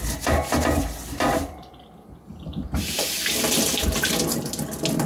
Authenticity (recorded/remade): recorded